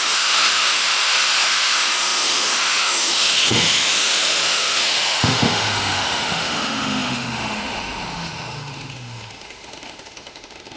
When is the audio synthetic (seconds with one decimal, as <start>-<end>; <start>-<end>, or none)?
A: 0.0-10.8